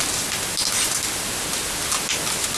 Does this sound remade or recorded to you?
recorded